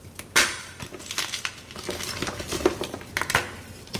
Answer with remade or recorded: recorded